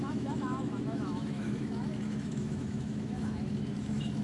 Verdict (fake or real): fake